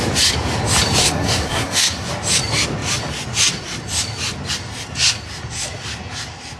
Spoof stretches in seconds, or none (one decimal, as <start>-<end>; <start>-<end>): 1.0-2.1